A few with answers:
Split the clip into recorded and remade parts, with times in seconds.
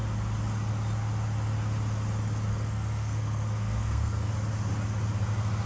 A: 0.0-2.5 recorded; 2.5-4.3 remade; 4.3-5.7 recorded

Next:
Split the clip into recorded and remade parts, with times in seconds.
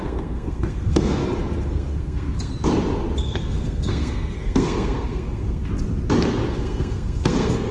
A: 0.0-1.2 remade; 1.2-1.7 recorded; 1.7-2.5 remade; 2.5-3.2 recorded; 3.2-5.6 remade; 5.6-6.5 recorded; 6.5-7.7 remade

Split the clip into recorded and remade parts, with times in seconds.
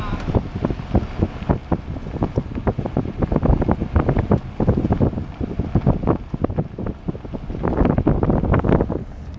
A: 0.0-9.4 recorded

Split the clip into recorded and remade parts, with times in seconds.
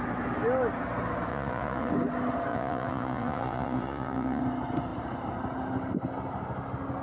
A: 0.0-1.3 recorded; 1.3-1.9 remade; 1.9-2.5 recorded; 2.5-4.4 remade; 4.4-7.0 recorded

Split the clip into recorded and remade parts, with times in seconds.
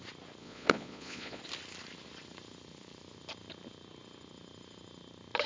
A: 0.0-0.4 recorded; 0.4-1.4 remade; 1.4-5.5 recorded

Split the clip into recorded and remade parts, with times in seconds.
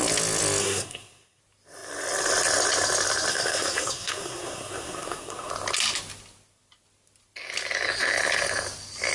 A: 0.0-0.6 recorded; 0.6-1.4 remade; 1.4-3.3 recorded; 3.3-5.5 remade; 5.5-9.1 recorded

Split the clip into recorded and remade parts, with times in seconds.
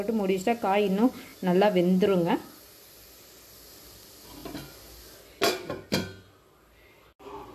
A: 0.0-7.5 recorded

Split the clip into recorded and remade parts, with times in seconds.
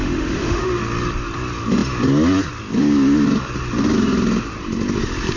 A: 0.0-0.8 remade; 0.8-5.4 recorded